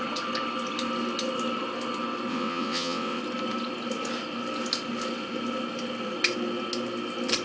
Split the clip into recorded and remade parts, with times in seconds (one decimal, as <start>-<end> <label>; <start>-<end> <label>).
0.0-2.3 recorded; 2.3-3.2 remade; 3.2-7.4 recorded